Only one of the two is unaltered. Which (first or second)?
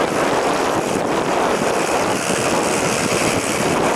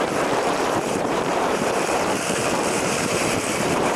first